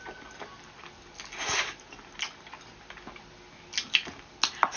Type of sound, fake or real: real